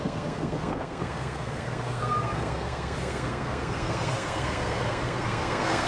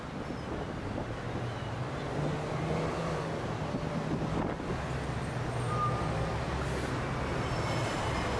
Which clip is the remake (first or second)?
first